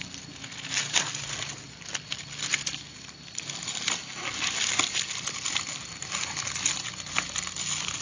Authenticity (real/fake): real